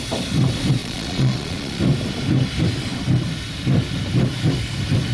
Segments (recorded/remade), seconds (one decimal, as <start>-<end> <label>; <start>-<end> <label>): 0.0-0.8 recorded; 0.8-1.8 remade; 1.8-5.1 recorded